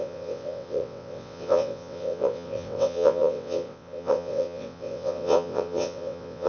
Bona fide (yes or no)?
no